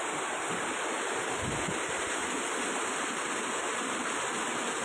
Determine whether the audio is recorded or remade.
recorded